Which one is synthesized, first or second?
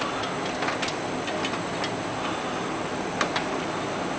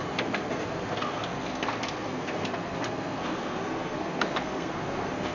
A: second